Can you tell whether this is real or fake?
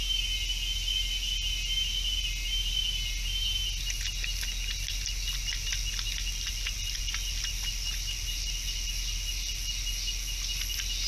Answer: real